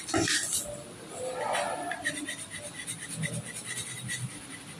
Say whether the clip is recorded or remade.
recorded